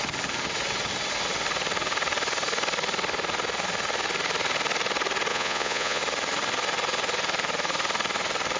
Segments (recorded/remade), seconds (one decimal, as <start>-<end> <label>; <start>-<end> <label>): 0.0-5.3 recorded; 5.3-6.0 remade; 6.0-8.6 recorded